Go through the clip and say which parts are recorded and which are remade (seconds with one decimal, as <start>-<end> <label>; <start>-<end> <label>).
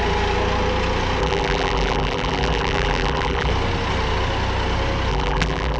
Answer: 0.0-1.2 recorded; 1.2-3.5 remade; 3.5-5.1 recorded; 5.1-5.8 remade